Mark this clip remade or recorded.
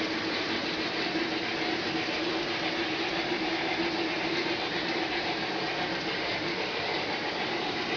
remade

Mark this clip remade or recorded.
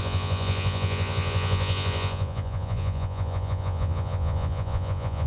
remade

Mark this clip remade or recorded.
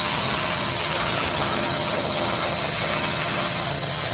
remade